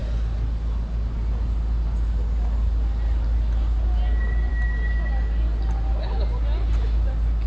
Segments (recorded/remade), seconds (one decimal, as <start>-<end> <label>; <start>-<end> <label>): 0.0-7.5 recorded